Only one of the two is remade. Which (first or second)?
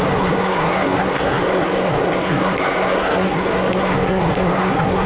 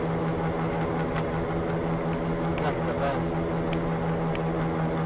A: first